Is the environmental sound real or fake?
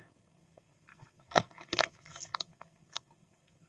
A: fake